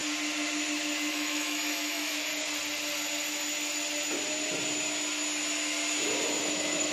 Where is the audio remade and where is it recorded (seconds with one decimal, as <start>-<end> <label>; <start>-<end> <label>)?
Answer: 0.0-1.1 recorded; 1.1-2.3 remade; 2.3-6.4 recorded; 6.4-6.9 remade